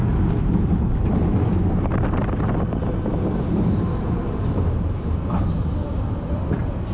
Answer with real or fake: real